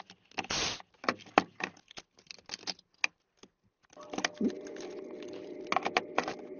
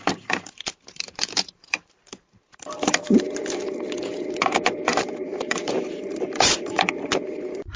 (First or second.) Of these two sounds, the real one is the first